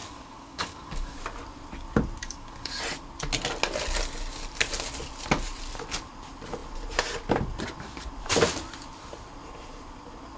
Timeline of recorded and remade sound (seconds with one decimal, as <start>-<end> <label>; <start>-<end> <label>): 0.0-1.2 remade; 1.2-2.2 recorded; 2.2-2.8 remade; 2.8-10.4 recorded